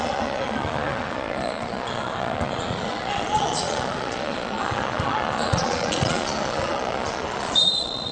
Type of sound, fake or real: fake